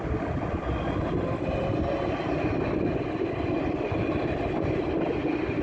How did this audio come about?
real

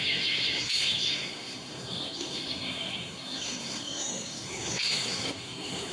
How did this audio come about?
fake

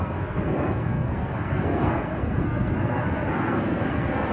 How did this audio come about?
fake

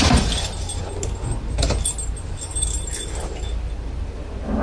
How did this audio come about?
real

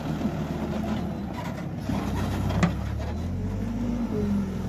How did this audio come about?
real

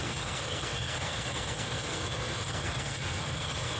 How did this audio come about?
fake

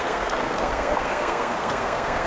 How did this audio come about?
fake